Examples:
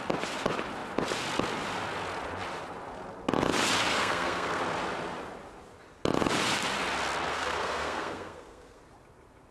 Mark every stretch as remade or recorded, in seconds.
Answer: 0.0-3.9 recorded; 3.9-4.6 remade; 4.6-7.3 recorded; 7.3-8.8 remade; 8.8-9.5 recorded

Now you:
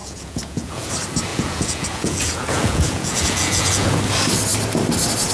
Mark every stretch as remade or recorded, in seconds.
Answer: 0.0-0.9 remade; 0.9-1.3 recorded; 1.3-4.0 remade; 4.0-5.3 recorded

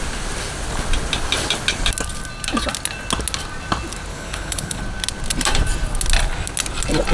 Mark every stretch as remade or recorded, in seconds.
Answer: 0.0-4.1 recorded; 4.1-4.8 remade; 4.8-7.1 recorded

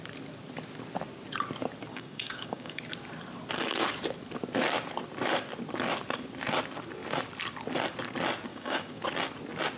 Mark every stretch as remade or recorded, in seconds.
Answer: 0.0-1.9 recorded; 1.9-2.8 remade; 2.8-8.5 recorded; 8.5-9.0 remade; 9.0-9.8 recorded

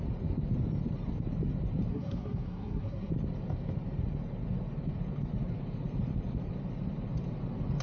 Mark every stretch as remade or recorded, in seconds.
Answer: 0.0-1.9 recorded; 1.9-3.1 remade; 3.1-7.8 recorded